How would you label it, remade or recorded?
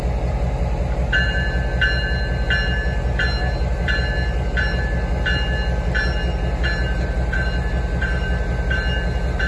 recorded